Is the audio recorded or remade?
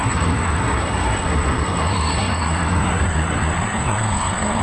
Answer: remade